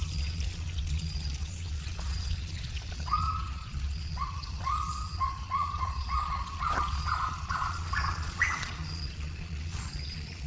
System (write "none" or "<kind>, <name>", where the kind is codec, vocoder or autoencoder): vocoder, Vocos